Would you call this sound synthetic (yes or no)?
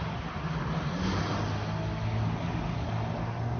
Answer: no